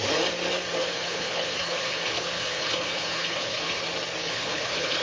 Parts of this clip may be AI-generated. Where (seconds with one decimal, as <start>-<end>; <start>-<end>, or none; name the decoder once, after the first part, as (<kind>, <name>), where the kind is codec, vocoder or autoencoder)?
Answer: 0.8-3.8 (codec, HILCodec); 4.2-5.0